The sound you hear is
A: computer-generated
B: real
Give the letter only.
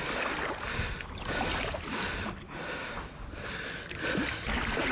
B